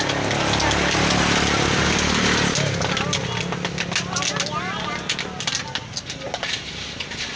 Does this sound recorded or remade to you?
recorded